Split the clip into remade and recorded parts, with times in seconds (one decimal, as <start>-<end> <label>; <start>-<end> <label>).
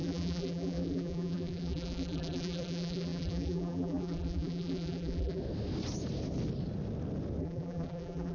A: 0.0-5.4 remade; 5.4-7.4 recorded; 7.4-8.3 remade